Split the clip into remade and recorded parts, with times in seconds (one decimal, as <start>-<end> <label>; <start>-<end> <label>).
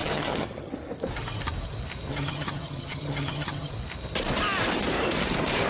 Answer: 0.0-0.7 remade; 0.7-2.1 recorded; 2.1-3.7 remade; 3.7-5.7 recorded